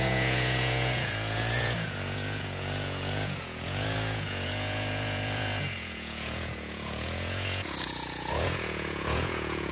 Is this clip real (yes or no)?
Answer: no